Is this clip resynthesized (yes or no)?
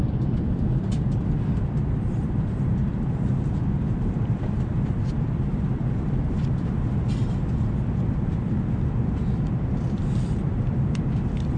yes